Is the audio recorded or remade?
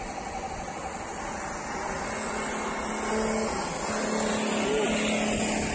recorded